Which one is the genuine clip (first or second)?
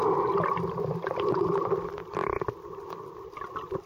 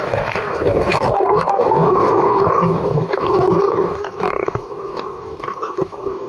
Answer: first